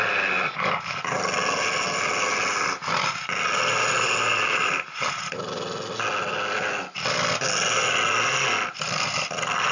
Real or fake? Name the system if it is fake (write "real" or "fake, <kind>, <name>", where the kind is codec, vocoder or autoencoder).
real